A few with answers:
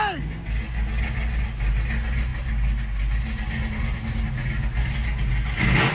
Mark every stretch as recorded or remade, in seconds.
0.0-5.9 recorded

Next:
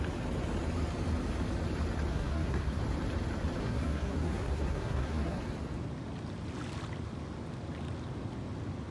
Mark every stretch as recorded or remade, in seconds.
0.0-2.1 recorded; 2.1-2.8 remade; 2.8-3.6 recorded; 3.6-5.4 remade; 5.4-8.9 recorded

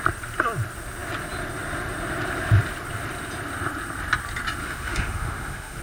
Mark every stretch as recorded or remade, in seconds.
0.0-4.6 recorded; 4.6-5.8 remade

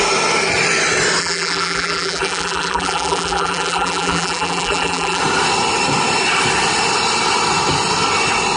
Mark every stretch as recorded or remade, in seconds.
0.0-1.2 recorded; 1.2-5.2 remade; 5.2-8.6 recorded

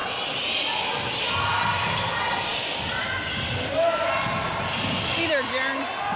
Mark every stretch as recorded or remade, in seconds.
0.0-6.2 recorded

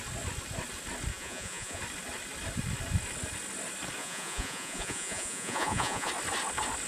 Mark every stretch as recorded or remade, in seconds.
0.0-1.1 recorded; 1.1-1.8 remade; 1.8-4.0 recorded; 4.0-6.1 remade; 6.1-6.9 recorded

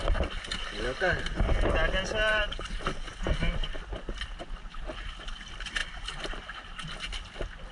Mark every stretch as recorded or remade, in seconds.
0.0-2.3 recorded; 2.3-2.8 remade; 2.8-7.7 recorded

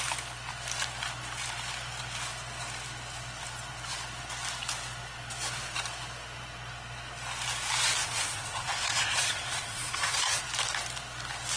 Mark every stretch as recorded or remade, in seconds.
0.0-8.0 recorded; 8.0-10.4 remade; 10.4-11.6 recorded